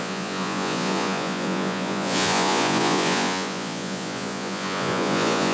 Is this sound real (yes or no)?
no